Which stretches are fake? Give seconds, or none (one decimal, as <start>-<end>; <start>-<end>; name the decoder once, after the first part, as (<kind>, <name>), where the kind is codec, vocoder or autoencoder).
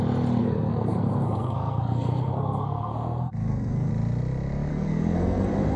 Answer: 0.4-3.9 (codec, SNAC); 4.7-5.8